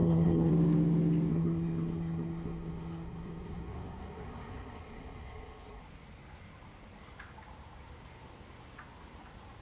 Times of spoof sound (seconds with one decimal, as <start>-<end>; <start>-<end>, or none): 0.0-0.5; 1.3-5.8